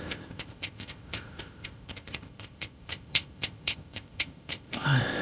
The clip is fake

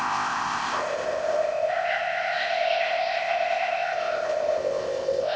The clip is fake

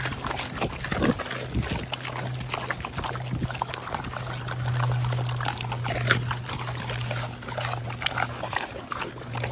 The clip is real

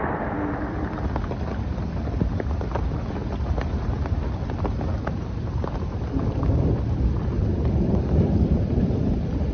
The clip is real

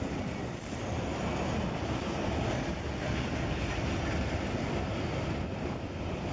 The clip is real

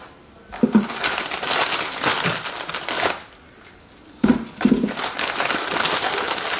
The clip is real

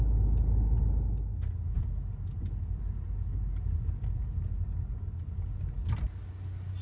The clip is real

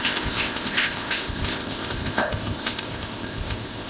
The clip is fake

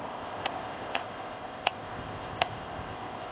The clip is fake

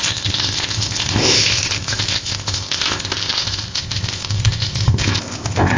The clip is fake